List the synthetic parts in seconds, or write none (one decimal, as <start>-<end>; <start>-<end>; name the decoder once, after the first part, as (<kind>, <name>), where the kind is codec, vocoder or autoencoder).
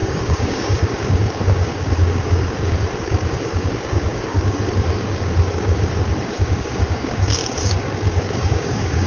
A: 0.0-9.1 (codec, DAC)